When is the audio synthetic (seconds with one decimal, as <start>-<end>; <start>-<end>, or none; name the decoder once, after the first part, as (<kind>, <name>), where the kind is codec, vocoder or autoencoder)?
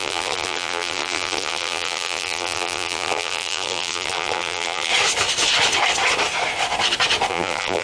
0.0-4.9 (vocoder, BigVGAN v2); 7.3-7.8